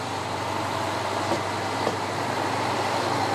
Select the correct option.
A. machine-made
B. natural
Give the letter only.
B